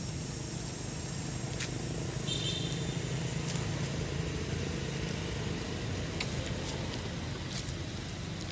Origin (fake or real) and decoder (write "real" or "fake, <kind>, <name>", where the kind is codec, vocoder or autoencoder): real